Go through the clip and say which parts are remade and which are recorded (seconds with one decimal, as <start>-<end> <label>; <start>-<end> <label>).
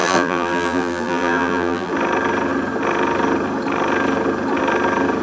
0.0-1.9 remade; 1.9-5.2 recorded